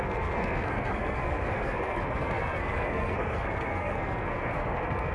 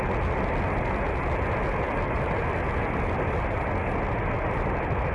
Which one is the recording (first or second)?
second